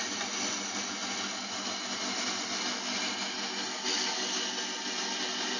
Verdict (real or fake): real